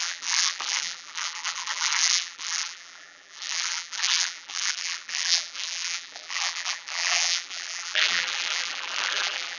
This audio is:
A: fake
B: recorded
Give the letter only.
A